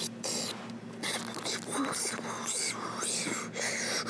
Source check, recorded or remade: recorded